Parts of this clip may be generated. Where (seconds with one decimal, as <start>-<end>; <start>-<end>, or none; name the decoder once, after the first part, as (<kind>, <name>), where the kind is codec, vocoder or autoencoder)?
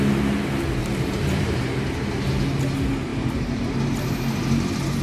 0.8-1.6 (vocoder, BigVGAN v2); 3.1-5.0